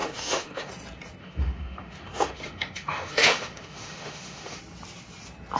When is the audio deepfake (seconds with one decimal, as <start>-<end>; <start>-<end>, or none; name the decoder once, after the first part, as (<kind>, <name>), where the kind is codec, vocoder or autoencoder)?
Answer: 0.0-0.7 (autoencoder, DAC-VAE); 1.2-4.6